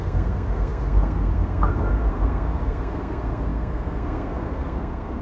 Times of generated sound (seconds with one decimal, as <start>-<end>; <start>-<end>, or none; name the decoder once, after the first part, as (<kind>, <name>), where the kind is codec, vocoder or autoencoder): 0.0-5.2 (codec, SNAC)